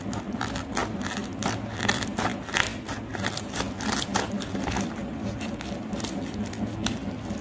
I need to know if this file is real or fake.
real